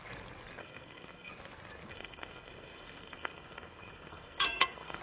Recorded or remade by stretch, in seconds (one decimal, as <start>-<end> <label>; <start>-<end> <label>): 0.0-0.6 recorded; 0.6-1.3 remade; 1.3-1.9 recorded; 1.9-5.0 remade